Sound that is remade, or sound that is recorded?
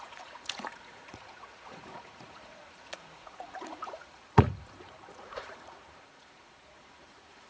remade